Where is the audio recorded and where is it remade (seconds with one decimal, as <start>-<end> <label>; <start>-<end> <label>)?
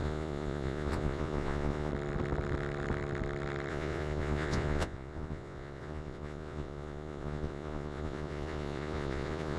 0.0-1.9 remade; 1.9-3.7 recorded; 3.7-9.6 remade